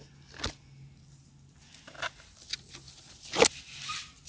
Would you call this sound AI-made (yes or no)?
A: no